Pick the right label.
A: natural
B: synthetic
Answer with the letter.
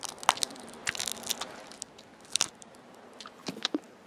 A